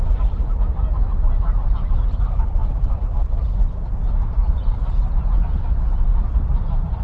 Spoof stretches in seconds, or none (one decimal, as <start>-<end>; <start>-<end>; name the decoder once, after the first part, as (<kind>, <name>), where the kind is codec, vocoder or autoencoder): none